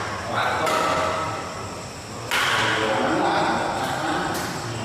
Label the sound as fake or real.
real